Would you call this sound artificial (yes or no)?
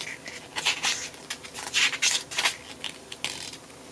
no